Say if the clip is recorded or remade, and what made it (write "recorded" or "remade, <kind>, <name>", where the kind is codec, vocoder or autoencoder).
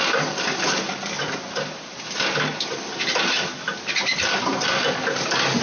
recorded